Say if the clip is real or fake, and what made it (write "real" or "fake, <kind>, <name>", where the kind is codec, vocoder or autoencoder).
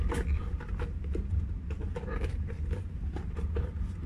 real